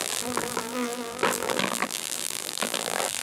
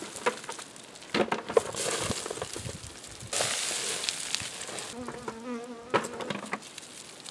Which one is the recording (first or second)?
second